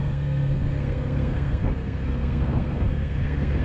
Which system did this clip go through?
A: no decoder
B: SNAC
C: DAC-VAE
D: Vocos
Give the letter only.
B